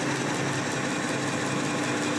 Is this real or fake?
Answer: real